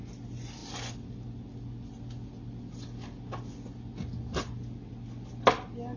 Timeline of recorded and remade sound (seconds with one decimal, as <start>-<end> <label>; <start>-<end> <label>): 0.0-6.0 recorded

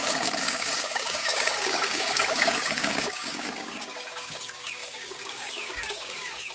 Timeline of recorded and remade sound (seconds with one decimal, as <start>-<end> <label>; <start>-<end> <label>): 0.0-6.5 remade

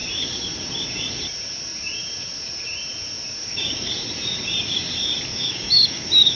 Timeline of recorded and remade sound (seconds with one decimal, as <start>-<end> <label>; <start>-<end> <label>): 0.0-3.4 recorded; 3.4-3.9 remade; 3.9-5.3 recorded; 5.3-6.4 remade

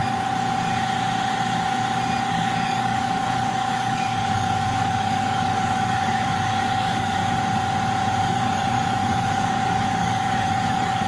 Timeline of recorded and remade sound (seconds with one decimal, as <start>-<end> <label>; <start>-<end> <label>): 0.0-2.3 recorded; 2.3-7.2 remade; 7.2-8.2 recorded; 8.2-11.1 remade

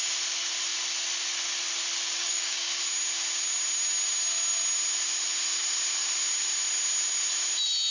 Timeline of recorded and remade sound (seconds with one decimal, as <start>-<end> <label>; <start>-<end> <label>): 0.0-2.2 recorded; 2.2-2.8 remade; 2.8-7.9 recorded